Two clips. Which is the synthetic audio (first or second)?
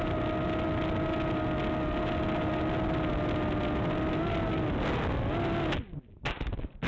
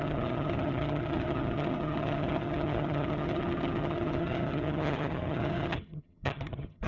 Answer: second